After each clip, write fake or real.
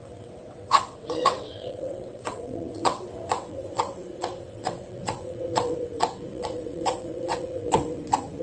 fake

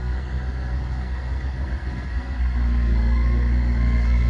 fake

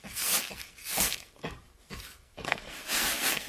fake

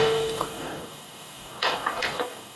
fake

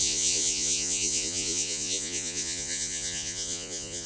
fake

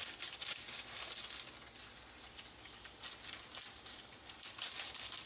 real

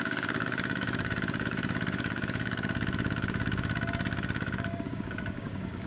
fake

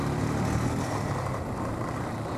fake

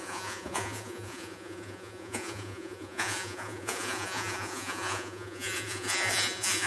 fake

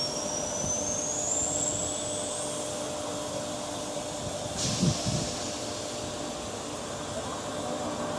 real